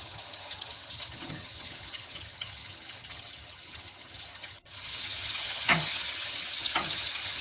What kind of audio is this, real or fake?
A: fake